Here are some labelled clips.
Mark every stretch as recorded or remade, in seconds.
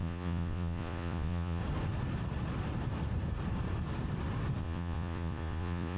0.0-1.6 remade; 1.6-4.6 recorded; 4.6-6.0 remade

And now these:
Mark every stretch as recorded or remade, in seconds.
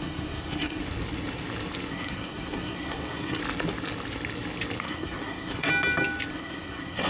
0.0-0.8 remade; 0.8-1.9 recorded; 1.9-3.4 remade; 3.4-4.8 recorded; 4.8-5.7 remade; 5.7-6.3 recorded; 6.3-7.1 remade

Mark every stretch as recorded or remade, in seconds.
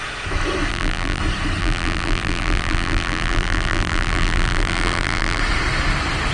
0.0-0.7 recorded; 0.7-1.2 remade; 1.2-1.6 recorded; 1.6-5.4 remade; 5.4-6.3 recorded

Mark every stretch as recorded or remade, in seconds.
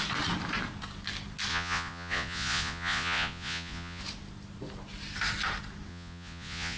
0.0-1.5 recorded; 1.5-4.0 remade; 4.0-5.9 recorded; 5.9-6.8 remade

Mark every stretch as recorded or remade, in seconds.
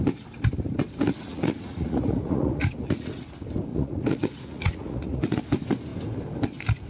0.0-1.3 recorded; 1.3-3.3 remade; 3.3-3.7 recorded; 3.7-5.4 remade; 5.4-6.9 recorded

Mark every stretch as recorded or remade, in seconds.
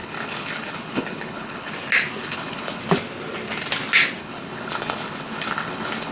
0.0-1.7 remade; 1.7-2.2 recorded; 2.2-2.8 remade; 2.8-4.2 recorded; 4.2-6.1 remade